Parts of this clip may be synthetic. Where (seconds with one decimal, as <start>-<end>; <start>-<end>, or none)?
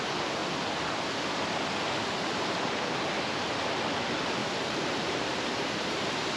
4.4-6.0